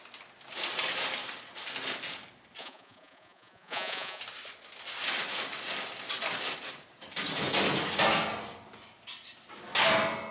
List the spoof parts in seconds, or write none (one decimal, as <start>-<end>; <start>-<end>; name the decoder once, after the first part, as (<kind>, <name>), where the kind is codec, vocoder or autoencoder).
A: 2.6-4.2 (vocoder, Vocos)